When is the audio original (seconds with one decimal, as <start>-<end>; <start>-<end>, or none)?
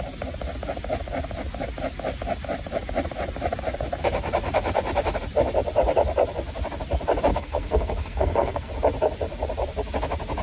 0.0-7.3; 8.7-10.4